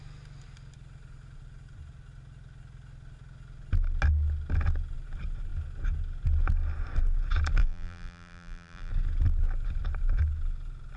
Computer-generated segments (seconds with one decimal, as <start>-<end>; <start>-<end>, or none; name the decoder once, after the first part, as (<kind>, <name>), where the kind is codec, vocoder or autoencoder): 7.6-8.9 (vocoder, BigVGAN v2)